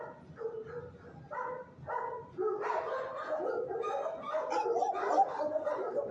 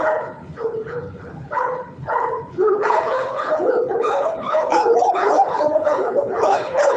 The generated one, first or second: second